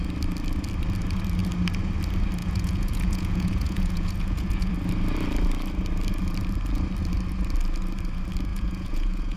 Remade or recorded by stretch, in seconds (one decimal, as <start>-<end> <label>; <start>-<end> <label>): 0.0-2.4 recorded; 2.4-4.7 remade; 4.7-8.5 recorded; 8.5-9.4 remade